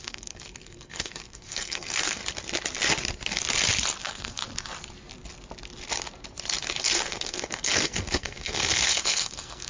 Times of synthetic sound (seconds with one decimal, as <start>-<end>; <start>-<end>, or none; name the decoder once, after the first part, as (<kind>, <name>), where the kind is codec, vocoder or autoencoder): 0.0-2.2 (codec, SNAC); 4.0-4.4; 6.8-9.7